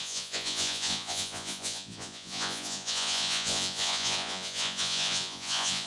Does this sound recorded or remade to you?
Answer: remade